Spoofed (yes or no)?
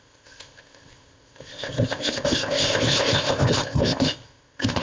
yes